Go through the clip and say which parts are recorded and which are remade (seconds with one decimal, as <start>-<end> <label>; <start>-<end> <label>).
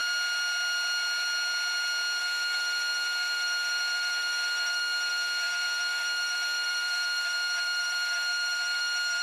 0.0-2.2 recorded; 2.2-9.2 remade